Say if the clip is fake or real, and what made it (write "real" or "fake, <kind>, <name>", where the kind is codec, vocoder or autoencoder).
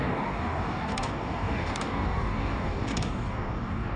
fake, codec, DAC